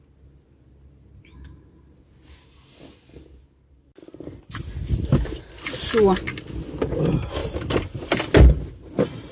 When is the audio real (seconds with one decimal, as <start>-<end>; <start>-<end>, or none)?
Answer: 0.0-9.3

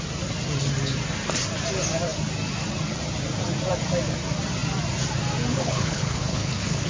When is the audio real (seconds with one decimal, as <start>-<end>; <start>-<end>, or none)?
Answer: 0.0-5.5

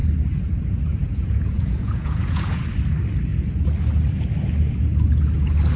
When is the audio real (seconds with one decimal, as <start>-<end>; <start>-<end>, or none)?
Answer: 0.0-1.0; 2.6-5.8

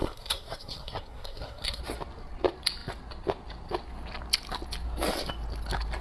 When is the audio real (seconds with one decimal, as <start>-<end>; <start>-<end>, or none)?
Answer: 1.8-6.0

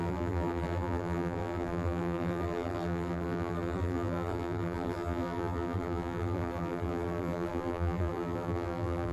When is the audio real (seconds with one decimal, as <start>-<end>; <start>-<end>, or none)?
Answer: none